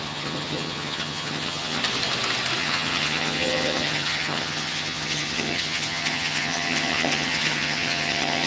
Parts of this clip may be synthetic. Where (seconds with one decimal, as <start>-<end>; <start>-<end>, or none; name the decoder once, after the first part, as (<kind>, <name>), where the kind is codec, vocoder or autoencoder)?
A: 0.0-1.8 (vocoder, HiFi-GAN); 2.6-8.5